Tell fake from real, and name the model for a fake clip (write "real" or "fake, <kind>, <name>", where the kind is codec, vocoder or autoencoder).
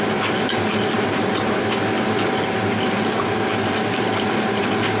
real